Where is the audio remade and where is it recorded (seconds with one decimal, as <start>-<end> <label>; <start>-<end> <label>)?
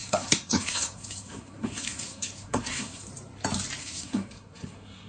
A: 0.0-3.1 remade; 3.1-3.8 recorded; 3.8-5.1 remade